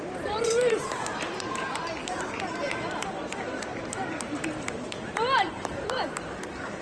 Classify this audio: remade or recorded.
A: remade